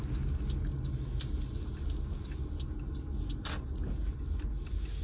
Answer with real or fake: real